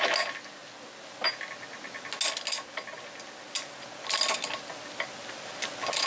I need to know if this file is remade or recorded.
recorded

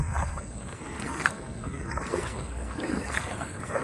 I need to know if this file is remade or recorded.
remade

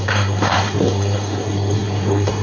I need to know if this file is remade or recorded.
remade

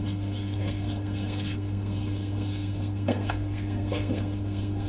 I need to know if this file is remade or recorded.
remade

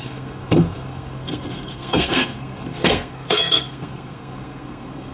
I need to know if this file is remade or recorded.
remade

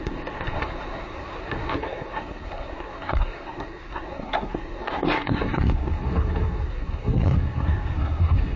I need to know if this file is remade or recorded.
remade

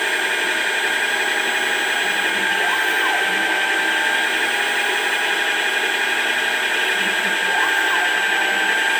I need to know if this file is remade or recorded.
recorded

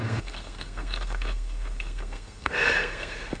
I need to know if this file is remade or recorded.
remade